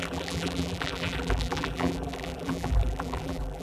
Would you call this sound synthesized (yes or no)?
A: yes